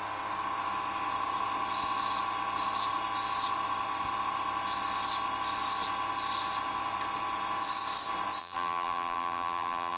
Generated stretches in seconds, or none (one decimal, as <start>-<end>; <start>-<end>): 8.4-10.0